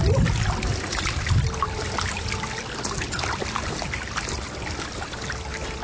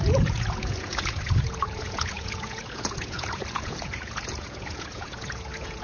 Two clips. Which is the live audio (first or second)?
first